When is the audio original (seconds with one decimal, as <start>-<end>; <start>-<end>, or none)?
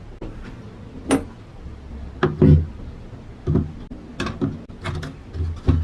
0.0-5.8